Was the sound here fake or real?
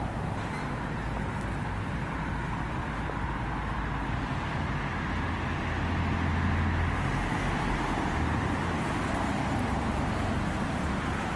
real